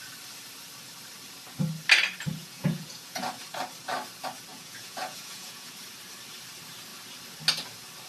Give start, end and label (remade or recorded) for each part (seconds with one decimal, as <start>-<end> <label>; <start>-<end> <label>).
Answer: 0.0-2.4 recorded; 2.4-3.3 remade; 3.3-4.5 recorded; 4.5-5.7 remade; 5.7-8.1 recorded